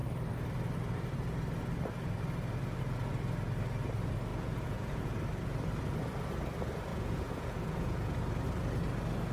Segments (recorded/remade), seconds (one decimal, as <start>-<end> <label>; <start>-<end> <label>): 0.0-4.3 recorded; 4.3-5.1 remade; 5.1-6.9 recorded; 6.9-8.1 remade; 8.1-9.3 recorded